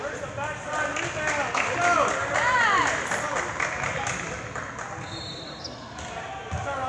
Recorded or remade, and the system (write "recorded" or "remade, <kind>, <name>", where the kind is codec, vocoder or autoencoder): recorded